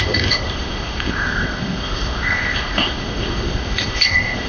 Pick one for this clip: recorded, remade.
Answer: remade